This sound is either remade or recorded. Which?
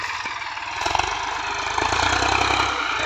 recorded